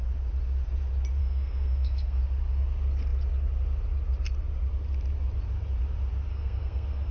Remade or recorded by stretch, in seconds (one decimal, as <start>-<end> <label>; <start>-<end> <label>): 0.0-1.2 recorded; 1.2-2.2 remade; 2.2-6.3 recorded; 6.3-7.1 remade